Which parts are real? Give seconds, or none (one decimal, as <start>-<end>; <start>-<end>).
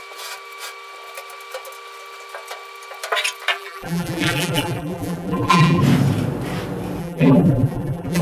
0.0-3.5; 5.8-7.0